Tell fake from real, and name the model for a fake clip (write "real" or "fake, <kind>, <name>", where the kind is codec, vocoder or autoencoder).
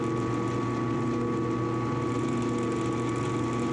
real